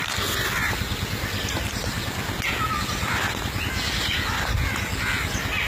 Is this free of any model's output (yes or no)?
yes